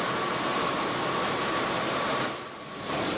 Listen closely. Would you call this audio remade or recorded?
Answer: recorded